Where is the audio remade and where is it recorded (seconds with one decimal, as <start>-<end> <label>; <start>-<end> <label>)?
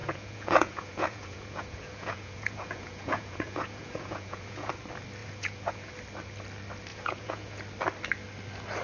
0.0-4.7 remade; 4.7-5.2 recorded; 5.2-5.9 remade; 5.9-6.9 recorded; 6.9-7.6 remade; 7.6-8.8 recorded